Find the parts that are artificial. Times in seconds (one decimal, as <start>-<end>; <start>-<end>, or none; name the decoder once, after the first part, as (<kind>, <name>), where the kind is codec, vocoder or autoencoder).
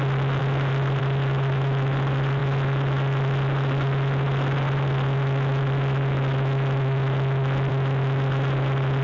none